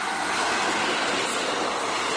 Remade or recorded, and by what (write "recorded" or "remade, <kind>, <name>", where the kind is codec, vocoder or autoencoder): recorded